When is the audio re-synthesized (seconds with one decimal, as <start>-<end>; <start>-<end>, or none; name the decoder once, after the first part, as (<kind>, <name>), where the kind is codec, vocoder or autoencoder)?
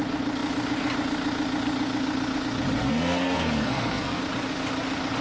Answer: 2.8-4.2 (codec, SNAC)